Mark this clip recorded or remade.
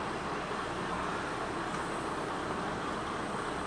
recorded